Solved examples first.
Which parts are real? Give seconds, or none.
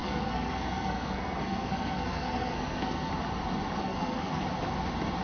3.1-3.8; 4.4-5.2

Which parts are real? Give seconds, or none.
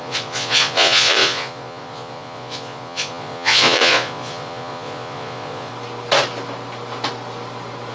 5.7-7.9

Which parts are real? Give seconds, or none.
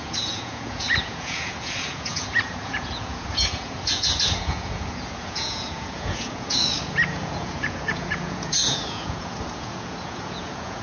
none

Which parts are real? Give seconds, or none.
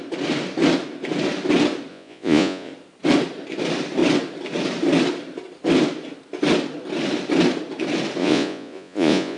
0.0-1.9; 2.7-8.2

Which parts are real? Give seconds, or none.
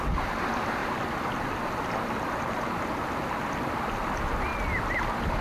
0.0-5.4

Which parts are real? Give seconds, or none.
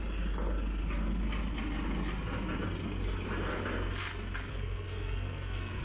0.0-4.5